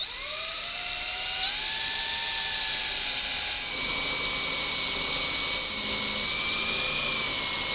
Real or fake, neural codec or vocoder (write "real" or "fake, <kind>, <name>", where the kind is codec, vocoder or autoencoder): real